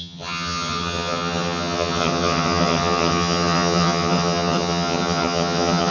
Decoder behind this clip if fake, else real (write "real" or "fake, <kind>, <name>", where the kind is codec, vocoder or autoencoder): fake, vocoder, HiFi-GAN